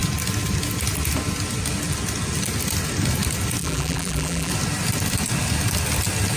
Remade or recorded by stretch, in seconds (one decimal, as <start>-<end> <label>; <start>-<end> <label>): 0.0-3.6 recorded; 3.6-4.5 remade; 4.5-6.4 recorded